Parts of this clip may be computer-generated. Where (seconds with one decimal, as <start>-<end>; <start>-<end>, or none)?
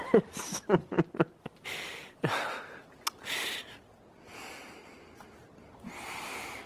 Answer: none